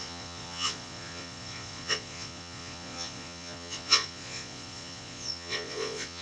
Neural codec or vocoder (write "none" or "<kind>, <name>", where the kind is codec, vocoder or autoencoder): vocoder, Vocos